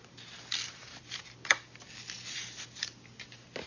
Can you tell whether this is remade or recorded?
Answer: recorded